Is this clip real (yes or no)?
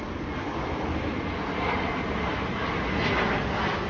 yes